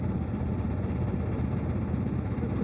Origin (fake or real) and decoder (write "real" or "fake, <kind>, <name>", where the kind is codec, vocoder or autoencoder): real